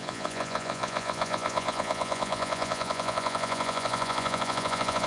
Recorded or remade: remade